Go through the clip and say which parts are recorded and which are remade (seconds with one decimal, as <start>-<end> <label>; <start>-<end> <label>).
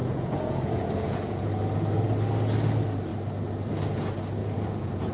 0.0-1.5 remade; 1.5-4.4 recorded; 4.4-5.1 remade